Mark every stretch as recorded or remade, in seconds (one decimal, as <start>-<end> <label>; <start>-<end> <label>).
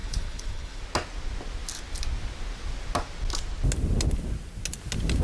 0.0-0.8 remade; 0.8-5.2 recorded